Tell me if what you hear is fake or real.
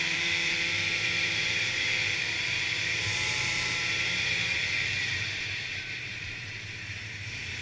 fake